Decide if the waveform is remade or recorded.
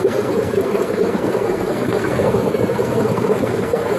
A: remade